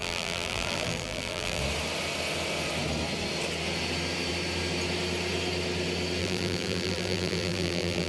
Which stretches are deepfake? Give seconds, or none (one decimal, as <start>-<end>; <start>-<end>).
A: 0.0-1.6; 6.2-8.1